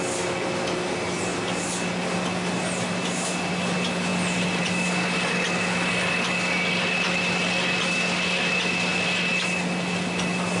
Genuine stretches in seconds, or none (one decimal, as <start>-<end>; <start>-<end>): 0.0-10.6